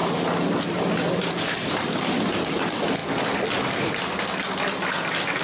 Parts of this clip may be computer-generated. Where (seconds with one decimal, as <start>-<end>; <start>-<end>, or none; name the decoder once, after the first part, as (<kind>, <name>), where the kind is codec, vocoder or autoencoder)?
none